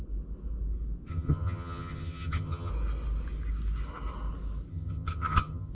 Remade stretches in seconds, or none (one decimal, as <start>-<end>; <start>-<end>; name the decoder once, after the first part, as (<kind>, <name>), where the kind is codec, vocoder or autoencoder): 1.1-2.7 (vocoder, HiFi-GAN); 4.7-5.7